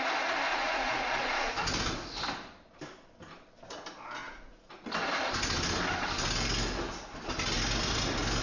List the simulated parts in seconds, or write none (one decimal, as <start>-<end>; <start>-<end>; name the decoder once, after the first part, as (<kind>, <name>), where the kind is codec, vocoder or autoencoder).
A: 0.5-1.5 (vocoder, Vocos); 4.2-4.7